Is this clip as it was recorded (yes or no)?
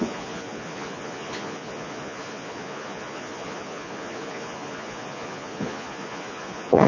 no